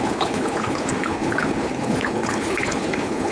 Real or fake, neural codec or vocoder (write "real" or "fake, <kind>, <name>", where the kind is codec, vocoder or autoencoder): fake, codec, HILCodec